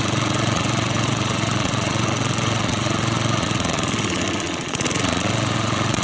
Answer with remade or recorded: remade